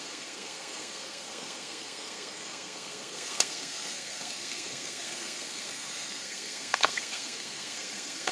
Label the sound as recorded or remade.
remade